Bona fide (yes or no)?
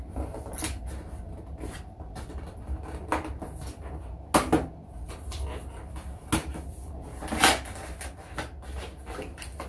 yes